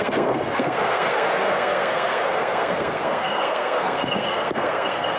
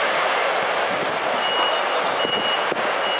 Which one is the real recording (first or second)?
second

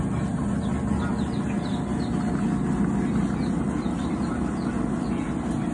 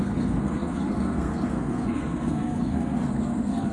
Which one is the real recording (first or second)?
first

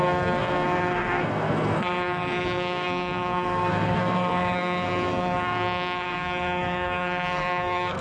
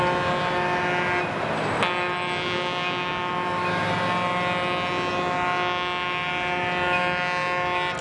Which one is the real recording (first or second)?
second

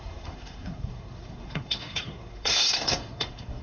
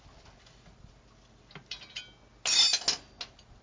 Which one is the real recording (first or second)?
second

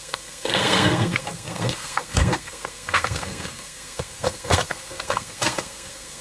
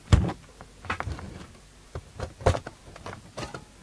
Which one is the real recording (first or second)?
second